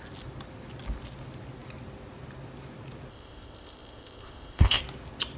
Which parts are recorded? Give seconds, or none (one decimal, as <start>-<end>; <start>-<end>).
0.0-3.1; 4.8-5.4